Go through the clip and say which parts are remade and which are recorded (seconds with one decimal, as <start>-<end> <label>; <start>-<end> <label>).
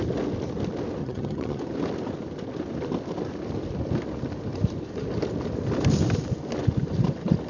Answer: 0.0-1.0 recorded; 1.0-1.6 remade; 1.6-7.5 recorded